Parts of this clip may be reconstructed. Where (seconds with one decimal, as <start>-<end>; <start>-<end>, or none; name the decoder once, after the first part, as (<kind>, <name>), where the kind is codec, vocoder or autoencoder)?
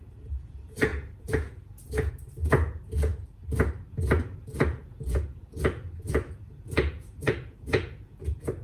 0.0-3.1 (vocoder, Vocos); 3.9-8.6